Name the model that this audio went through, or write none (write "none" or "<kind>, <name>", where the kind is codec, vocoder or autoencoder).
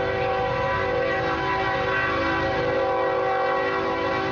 none